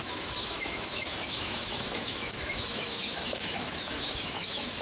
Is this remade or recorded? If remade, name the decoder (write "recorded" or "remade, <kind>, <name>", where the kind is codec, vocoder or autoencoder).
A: remade, autoencoder, DAC-VAE